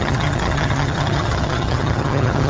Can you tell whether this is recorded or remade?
remade